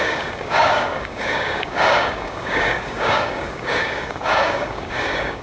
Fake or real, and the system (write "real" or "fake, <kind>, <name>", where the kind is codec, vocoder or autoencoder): fake, codec, DAC